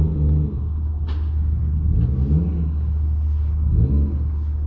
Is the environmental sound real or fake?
real